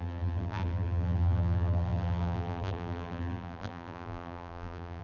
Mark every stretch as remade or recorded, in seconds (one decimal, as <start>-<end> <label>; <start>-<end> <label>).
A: 0.0-5.0 remade